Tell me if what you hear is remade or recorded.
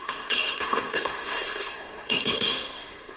remade